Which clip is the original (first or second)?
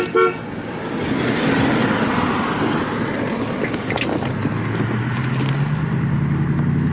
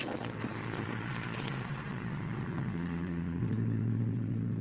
first